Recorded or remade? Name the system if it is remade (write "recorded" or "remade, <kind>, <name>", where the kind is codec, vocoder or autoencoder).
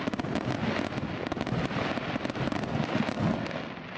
recorded